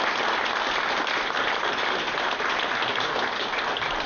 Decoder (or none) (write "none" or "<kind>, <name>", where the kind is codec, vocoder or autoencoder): none